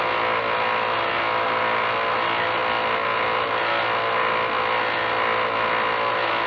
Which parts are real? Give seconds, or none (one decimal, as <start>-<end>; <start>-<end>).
0.0-6.5